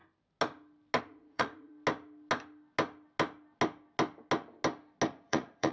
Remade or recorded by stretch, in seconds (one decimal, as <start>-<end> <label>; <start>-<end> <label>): 0.0-1.0 recorded; 1.0-1.7 remade; 1.7-5.1 recorded; 5.1-5.7 remade